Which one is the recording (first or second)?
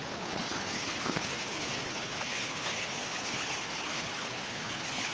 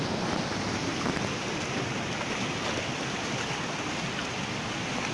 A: second